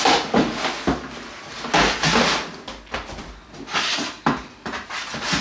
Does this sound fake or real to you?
real